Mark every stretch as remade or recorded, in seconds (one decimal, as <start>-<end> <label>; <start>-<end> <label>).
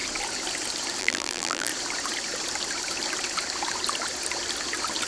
0.0-1.0 recorded; 1.0-1.7 remade; 1.7-5.1 recorded